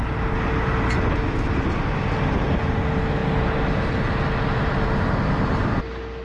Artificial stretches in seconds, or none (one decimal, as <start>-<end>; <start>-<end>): none